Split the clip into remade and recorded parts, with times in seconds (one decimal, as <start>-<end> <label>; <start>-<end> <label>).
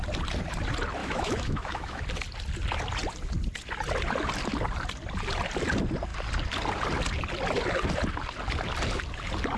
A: 0.0-1.0 recorded; 1.0-2.0 remade; 2.0-9.6 recorded